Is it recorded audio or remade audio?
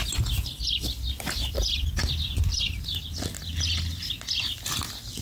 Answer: recorded